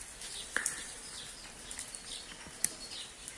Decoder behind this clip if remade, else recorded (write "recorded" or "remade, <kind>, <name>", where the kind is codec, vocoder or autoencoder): recorded